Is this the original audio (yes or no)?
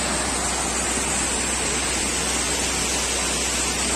yes